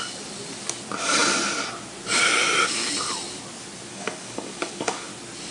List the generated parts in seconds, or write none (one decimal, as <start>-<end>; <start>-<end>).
3.9-5.1